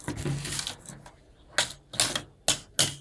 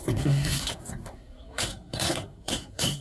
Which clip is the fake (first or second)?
second